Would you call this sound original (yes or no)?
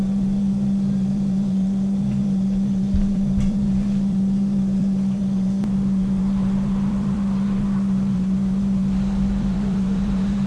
no